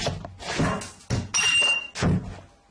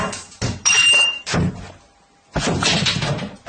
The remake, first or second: second